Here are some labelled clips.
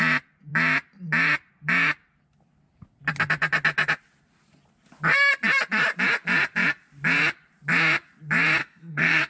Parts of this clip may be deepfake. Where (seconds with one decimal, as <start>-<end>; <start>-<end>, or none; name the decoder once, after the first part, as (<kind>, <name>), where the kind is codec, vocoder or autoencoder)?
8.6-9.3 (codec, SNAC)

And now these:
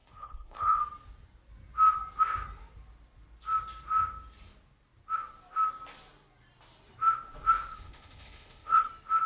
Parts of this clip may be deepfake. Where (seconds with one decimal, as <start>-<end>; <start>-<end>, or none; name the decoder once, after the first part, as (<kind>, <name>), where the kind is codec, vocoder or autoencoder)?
0.0-0.8 (codec, HILCodec); 7.7-8.9

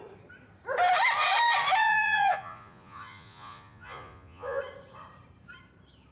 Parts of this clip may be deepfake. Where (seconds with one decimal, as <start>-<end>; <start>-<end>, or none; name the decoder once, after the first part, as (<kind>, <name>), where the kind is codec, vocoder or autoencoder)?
1.8-4.6 (vocoder, Vocos)

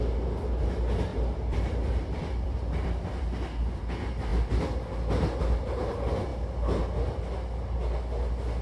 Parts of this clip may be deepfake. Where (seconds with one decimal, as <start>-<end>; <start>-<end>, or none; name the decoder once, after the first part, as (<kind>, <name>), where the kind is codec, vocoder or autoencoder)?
1.1-3.8 (vocoder, BigVGAN v2)